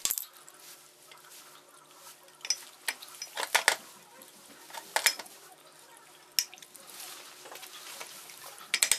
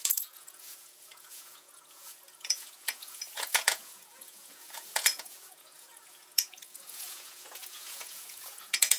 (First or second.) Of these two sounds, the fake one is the second